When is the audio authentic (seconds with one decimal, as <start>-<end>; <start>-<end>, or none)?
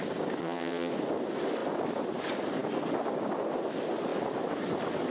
0.0-0.4; 0.9-5.1